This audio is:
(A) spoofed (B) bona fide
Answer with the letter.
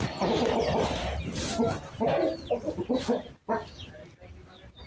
B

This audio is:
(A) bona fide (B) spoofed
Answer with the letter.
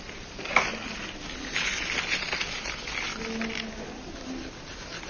A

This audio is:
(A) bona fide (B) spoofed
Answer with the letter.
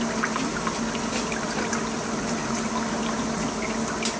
A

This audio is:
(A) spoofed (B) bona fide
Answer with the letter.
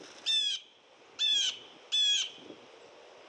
B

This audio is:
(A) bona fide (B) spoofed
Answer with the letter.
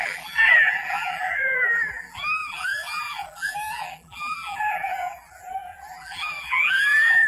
B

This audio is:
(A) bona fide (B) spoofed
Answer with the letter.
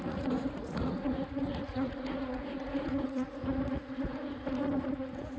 B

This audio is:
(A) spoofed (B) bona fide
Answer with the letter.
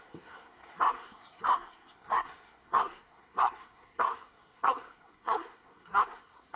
A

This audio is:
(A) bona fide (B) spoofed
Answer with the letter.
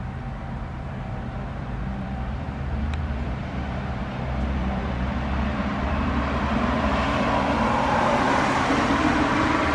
B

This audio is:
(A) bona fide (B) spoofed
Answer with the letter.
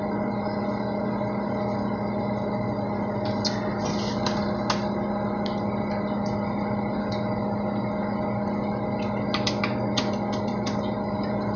A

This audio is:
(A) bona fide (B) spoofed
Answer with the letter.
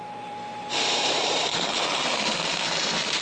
B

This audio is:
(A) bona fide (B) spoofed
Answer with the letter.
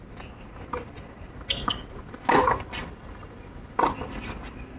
A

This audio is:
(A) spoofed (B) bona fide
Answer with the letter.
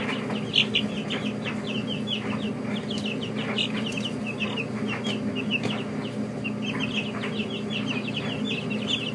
B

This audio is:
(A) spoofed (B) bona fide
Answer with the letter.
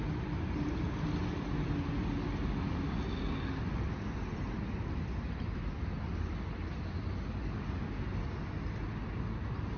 B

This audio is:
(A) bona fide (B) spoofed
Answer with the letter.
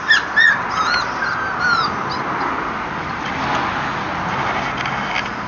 A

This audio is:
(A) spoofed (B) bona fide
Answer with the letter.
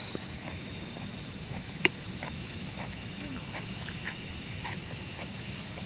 A